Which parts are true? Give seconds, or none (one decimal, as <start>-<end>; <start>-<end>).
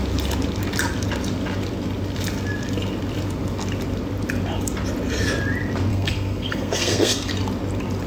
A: 0.0-5.9; 7.3-8.1